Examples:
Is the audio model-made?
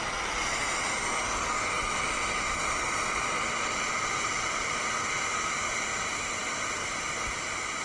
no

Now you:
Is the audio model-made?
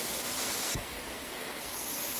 yes